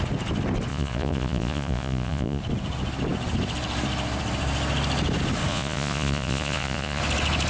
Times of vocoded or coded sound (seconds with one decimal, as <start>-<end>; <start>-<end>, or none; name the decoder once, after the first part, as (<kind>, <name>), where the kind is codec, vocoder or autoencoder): 0.7-2.4 (vocoder, Vocos); 5.5-7.0